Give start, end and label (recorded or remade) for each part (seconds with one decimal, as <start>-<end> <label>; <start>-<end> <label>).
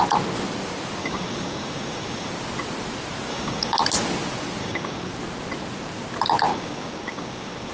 0.0-1.0 recorded; 1.0-2.3 remade; 2.3-3.3 recorded; 3.3-3.8 remade; 3.8-4.6 recorded; 4.6-5.1 remade; 5.1-6.5 recorded; 6.5-7.7 remade